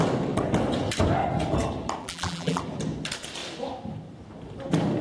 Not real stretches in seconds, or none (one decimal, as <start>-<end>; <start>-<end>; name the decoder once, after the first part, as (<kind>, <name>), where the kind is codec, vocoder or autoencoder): 2.0-2.6 (vocoder, BigVGAN v2)